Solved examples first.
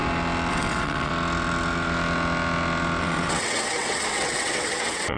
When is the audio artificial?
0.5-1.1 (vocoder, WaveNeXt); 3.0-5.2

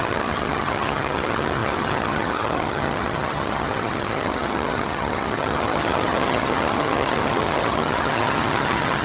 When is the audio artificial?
0.0-9.0 (vocoder, HiFi-GAN)

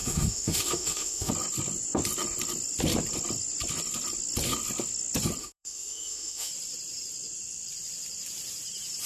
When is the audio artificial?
0.0-1.3 (autoencoder, DAC-VAE); 5.4-6.5